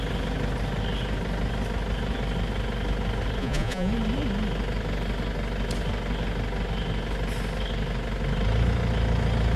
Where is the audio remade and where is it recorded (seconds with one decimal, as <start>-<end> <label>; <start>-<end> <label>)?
0.0-3.4 recorded; 3.4-3.9 remade; 3.9-9.6 recorded